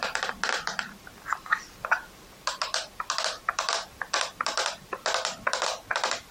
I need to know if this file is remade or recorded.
recorded